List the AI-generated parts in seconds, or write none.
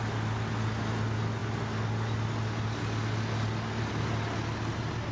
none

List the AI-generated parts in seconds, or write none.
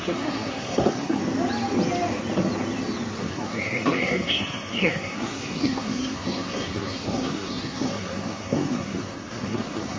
0.0-1.2 (codec, SNAC); 3.2-10.0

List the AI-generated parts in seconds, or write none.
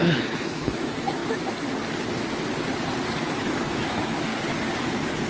0.0-1.2 (autoencoder, DAC-VAE); 3.3-4.3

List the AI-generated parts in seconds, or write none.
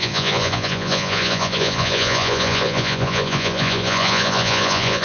0.0-5.0 (vocoder, Vocos)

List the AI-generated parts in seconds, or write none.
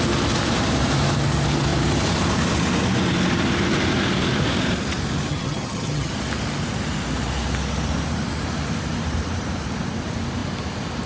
5.3-6.1 (vocoder, HiFi-GAN)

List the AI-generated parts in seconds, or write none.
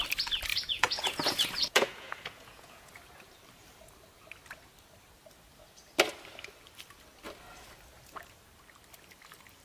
0.5-3.0 (vocoder, Vocos)